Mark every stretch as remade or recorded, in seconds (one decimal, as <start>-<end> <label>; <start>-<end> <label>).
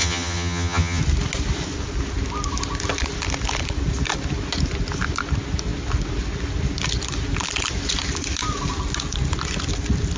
0.0-1.0 remade; 1.0-10.2 recorded